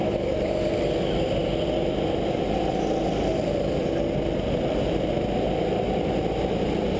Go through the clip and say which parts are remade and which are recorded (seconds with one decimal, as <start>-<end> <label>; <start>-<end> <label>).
0.0-7.0 recorded